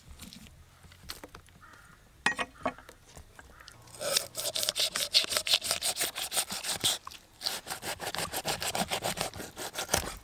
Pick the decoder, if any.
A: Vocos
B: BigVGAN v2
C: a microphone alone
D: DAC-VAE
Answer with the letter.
C